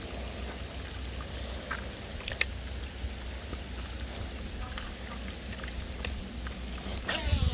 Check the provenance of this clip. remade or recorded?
recorded